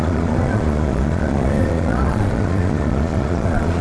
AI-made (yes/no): yes